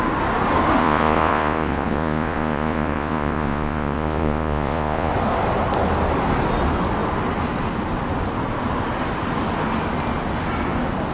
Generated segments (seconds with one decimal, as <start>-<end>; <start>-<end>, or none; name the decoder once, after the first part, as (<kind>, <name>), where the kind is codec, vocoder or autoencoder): 0.8-5.1 (vocoder, Vocos)